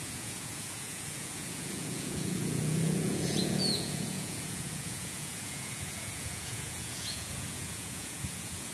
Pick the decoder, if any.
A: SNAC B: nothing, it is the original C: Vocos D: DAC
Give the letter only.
C